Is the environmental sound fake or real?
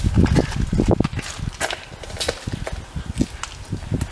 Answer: real